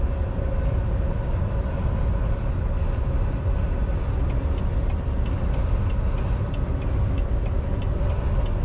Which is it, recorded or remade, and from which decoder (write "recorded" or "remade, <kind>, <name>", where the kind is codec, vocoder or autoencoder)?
recorded